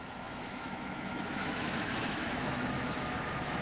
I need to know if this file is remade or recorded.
remade